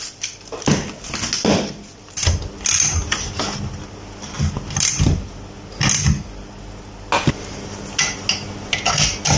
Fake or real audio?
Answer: real